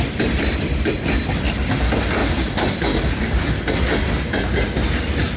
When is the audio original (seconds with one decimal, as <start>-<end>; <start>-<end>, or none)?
0.0-5.4